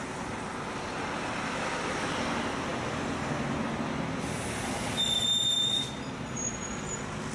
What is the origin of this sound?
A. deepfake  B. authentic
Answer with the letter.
B